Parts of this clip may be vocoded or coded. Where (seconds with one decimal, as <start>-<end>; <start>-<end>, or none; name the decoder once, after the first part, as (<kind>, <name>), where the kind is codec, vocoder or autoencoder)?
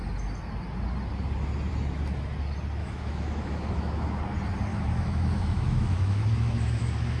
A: 2.8-4.2 (autoencoder, DAC-VAE); 4.7-7.2